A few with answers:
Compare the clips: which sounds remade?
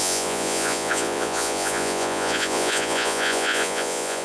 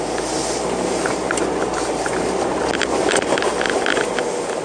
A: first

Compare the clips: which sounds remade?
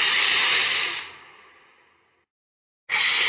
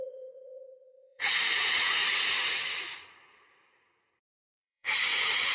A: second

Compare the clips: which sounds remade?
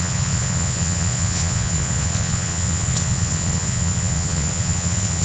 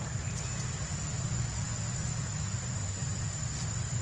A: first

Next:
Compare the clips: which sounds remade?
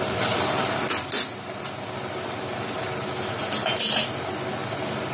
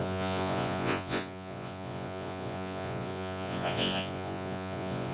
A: second